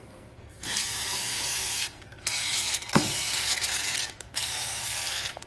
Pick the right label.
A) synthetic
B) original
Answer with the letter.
A